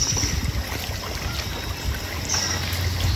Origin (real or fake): real